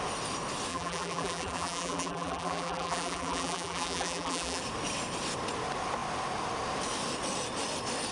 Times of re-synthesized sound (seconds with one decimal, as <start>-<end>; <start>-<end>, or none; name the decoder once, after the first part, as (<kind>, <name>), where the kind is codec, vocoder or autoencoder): 0.7-4.6 (vocoder, BigVGAN v2)